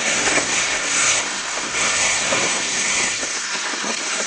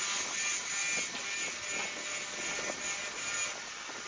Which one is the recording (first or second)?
second